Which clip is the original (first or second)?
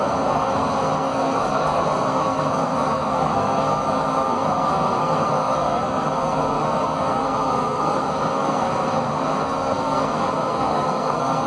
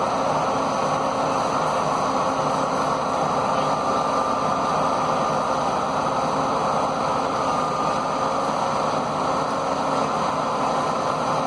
second